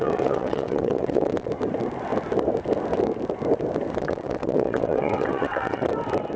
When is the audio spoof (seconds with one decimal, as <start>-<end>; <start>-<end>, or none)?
0.0-1.5; 4.0-5.9